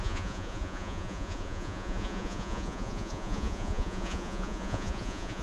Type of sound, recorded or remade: remade